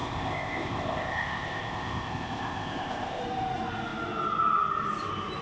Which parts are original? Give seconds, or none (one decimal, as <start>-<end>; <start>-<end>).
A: 3.2-5.4